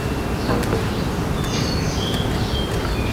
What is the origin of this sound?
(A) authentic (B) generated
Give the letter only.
A